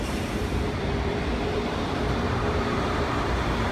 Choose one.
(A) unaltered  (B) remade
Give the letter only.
B